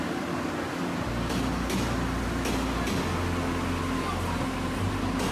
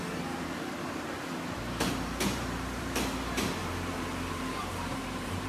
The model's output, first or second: second